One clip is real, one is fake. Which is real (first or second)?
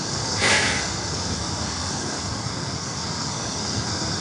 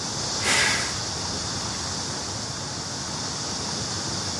second